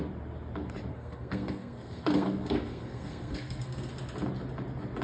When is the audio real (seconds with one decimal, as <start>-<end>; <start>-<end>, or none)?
0.0-0.9; 3.9-5.0